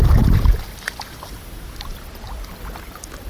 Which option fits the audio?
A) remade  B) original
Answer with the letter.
A